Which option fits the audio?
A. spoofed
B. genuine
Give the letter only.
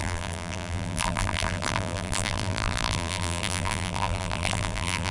A